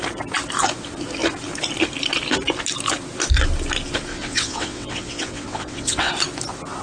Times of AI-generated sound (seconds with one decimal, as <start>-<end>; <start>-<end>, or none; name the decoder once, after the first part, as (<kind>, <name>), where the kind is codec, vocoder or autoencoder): 4.1-6.1 (vocoder, WaveNeXt)